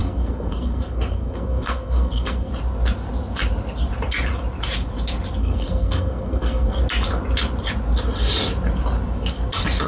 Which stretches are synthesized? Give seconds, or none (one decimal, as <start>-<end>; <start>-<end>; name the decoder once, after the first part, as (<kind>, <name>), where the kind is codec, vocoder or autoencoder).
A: 0.0-2.5 (codec, SNAC); 5.4-6.8